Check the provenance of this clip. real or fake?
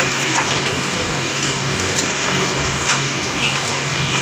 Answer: fake